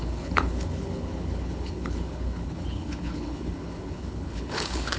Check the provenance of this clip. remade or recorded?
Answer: remade